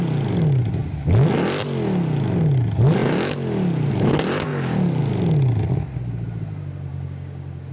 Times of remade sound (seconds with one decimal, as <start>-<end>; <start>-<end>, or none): 6.9-7.7